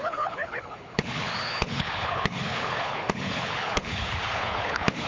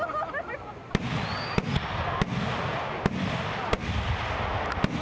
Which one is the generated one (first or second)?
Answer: first